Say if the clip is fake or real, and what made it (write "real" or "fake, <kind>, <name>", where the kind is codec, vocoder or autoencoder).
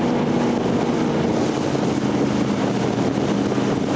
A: real